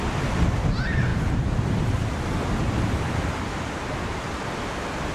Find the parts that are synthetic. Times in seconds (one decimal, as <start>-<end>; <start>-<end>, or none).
1.1-4.2